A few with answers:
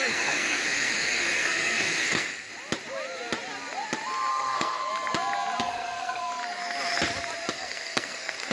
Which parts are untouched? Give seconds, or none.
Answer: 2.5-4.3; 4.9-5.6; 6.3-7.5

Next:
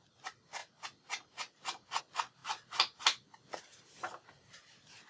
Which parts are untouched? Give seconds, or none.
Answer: 0.0-5.1